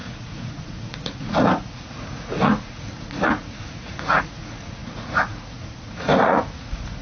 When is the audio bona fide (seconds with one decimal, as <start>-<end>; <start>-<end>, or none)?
none